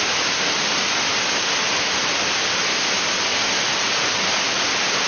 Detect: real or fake real